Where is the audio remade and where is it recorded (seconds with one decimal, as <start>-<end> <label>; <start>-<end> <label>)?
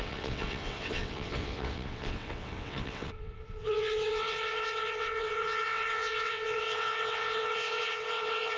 0.0-8.6 remade